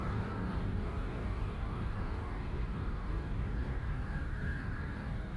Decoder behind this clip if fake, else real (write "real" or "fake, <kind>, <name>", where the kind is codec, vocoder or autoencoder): fake, codec, DAC